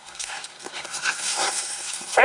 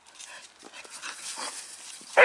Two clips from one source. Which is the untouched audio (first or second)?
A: second